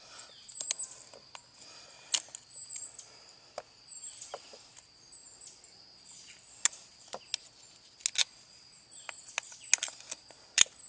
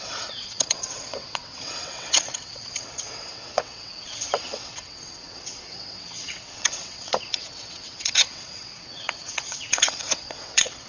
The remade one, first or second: second